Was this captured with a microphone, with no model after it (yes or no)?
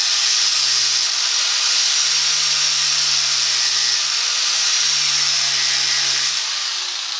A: yes